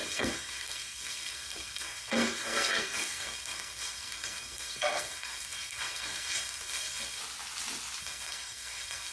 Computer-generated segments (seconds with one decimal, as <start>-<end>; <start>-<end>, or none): 0.0-7.2; 8.0-9.1

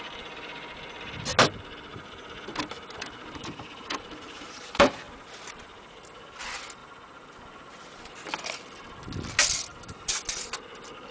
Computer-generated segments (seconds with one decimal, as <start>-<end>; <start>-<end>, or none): 1.9-6.2; 6.8-8.2; 9.7-10.2